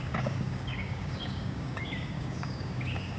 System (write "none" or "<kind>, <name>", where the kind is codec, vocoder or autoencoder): codec, DAC